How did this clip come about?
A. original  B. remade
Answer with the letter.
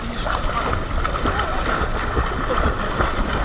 B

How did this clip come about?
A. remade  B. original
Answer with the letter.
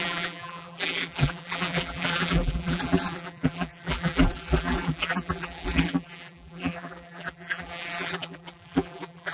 A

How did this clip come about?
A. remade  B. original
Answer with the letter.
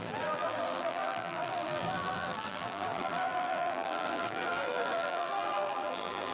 A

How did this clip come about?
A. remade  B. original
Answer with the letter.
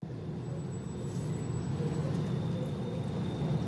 B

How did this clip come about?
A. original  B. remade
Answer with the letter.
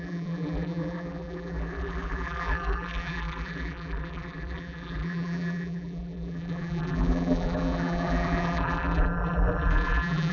B